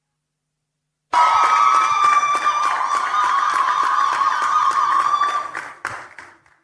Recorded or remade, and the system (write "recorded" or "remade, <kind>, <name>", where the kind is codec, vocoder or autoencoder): recorded